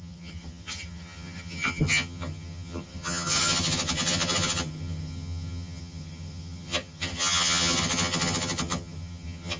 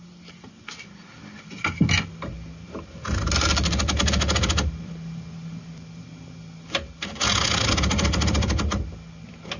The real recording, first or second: second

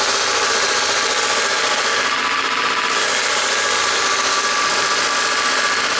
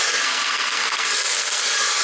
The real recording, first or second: first